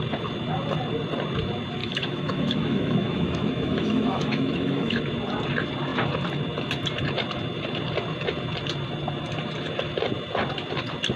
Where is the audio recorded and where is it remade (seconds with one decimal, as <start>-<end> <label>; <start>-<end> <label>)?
0.0-1.8 recorded; 1.8-5.0 remade; 5.0-11.2 recorded